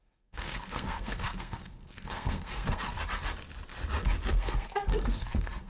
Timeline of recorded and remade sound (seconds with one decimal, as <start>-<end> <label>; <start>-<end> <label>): 0.0-3.0 remade; 3.0-4.3 recorded; 4.3-5.7 remade